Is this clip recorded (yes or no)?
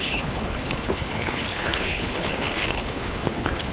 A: no